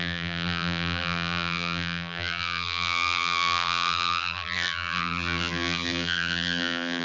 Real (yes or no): no